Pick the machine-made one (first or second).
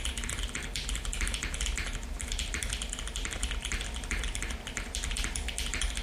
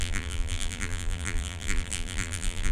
second